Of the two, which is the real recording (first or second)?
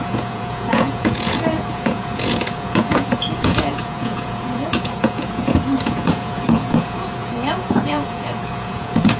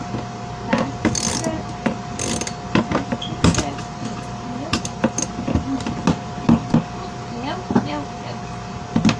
second